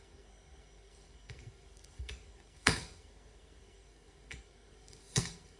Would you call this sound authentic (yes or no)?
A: no